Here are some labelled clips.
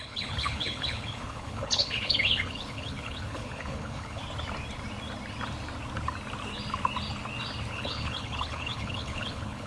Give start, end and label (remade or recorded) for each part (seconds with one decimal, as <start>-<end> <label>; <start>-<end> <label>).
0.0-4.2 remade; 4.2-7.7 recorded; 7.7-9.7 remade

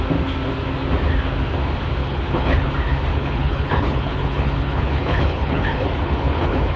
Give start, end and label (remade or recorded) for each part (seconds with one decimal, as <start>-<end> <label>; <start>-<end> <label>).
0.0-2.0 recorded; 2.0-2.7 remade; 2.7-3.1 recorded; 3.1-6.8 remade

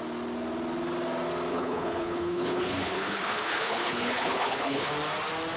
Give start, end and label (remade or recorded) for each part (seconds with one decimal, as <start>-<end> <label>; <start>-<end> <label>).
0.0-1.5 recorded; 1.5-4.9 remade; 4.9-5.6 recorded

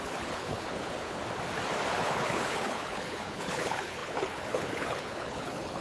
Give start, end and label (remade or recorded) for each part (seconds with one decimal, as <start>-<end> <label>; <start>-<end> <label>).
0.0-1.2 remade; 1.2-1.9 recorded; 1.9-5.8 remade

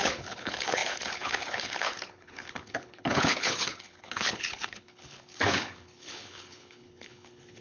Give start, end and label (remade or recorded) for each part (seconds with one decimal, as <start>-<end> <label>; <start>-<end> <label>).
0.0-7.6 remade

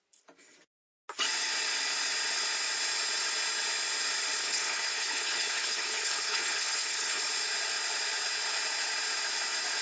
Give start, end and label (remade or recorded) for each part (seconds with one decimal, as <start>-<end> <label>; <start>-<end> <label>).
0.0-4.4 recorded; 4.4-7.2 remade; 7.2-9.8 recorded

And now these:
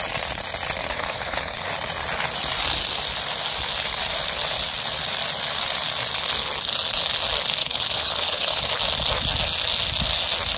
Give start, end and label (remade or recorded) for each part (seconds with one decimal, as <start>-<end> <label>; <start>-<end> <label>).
0.0-0.8 recorded; 0.8-1.7 remade; 1.7-7.6 recorded; 7.6-8.6 remade; 8.6-10.6 recorded